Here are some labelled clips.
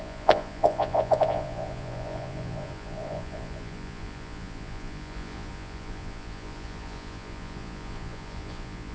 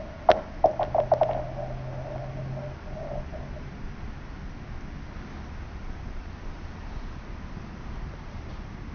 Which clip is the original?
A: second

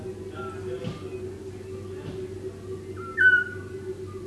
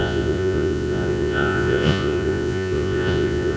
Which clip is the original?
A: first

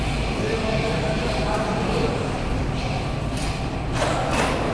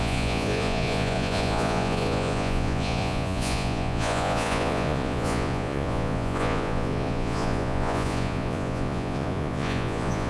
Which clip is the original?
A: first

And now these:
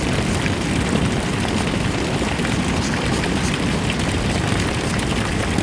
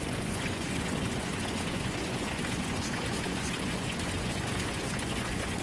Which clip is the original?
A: first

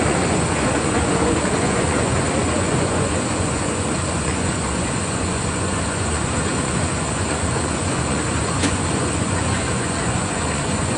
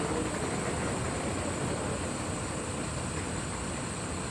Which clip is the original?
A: second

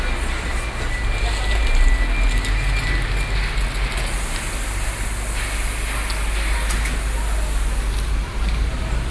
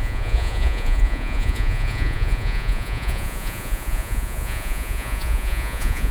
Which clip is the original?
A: first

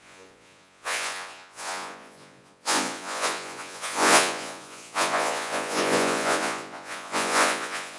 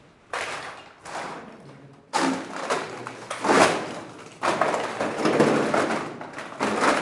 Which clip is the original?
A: second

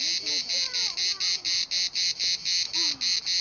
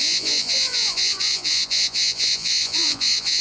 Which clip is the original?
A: first